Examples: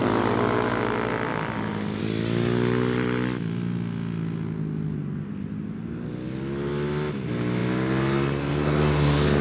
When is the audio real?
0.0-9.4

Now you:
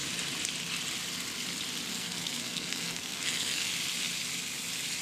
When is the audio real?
0.0-1.9; 3.7-5.0

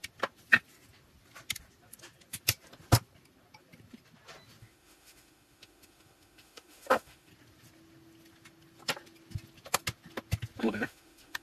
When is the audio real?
0.0-4.6; 7.3-10.6

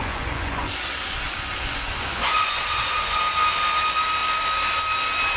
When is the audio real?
3.2-5.4

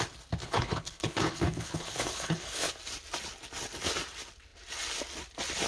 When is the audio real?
0.0-0.4; 2.7-5.7